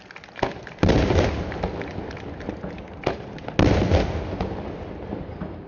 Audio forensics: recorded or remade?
recorded